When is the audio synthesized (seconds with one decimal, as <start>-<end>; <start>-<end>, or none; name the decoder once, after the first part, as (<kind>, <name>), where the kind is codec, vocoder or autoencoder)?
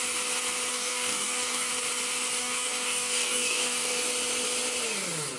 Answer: 0.7-1.7 (codec, DAC); 2.4-4.0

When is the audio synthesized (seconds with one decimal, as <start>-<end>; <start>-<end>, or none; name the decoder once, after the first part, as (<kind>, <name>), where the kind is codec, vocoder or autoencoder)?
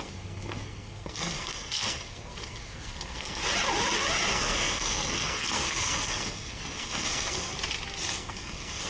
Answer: 0.0-3.4 (codec, SNAC); 4.3-7.5; 8.1-8.9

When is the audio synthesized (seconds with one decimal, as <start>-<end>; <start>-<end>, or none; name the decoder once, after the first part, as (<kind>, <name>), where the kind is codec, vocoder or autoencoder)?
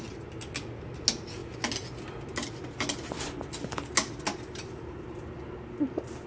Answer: none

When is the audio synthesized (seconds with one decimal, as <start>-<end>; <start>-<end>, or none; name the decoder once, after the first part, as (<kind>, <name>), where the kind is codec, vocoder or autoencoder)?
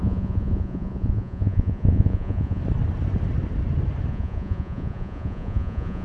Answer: 0.0-2.6 (vocoder, Vocos); 4.1-6.0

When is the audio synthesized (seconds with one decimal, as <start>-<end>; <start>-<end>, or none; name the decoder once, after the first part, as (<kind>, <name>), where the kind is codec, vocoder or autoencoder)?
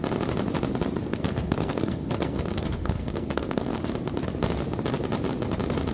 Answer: 1.1-3.8 (codec, SNAC)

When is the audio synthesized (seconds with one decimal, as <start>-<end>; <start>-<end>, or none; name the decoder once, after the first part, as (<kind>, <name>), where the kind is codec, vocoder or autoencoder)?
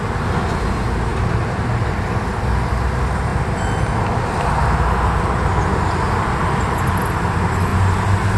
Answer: none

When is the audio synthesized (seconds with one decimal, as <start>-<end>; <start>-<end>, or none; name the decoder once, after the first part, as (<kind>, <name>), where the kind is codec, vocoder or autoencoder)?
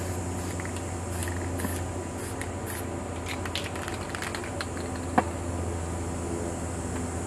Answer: none